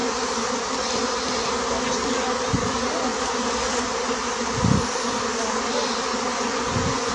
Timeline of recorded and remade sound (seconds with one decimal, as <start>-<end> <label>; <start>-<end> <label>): 0.0-6.3 recorded; 6.3-7.1 remade